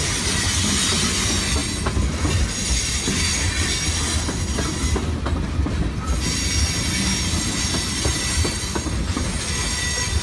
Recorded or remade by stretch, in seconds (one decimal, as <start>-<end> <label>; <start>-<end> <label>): 0.0-10.2 recorded